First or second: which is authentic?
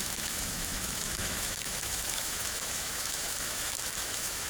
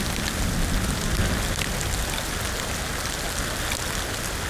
second